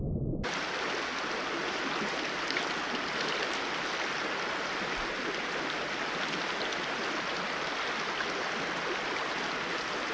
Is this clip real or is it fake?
real